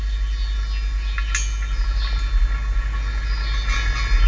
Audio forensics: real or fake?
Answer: real